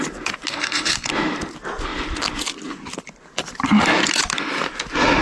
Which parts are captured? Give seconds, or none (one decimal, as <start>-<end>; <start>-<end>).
0.0-0.5; 1.1-5.2